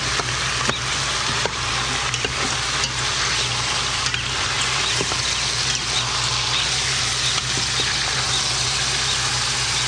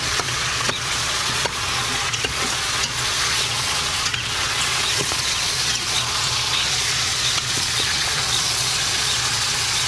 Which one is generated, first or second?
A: second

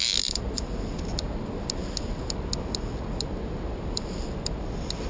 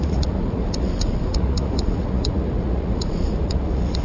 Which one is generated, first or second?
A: second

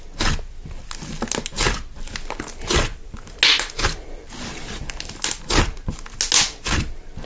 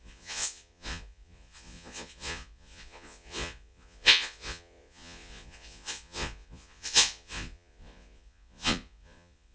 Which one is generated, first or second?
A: second